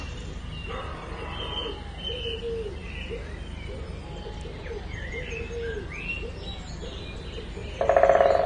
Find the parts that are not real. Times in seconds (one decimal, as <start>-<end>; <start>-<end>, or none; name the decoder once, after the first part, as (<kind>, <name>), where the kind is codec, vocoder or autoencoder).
none